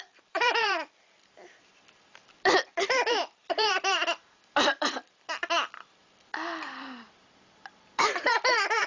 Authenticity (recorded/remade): remade